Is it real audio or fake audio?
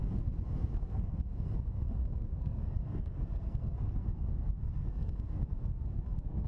fake